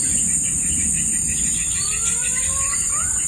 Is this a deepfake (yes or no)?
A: yes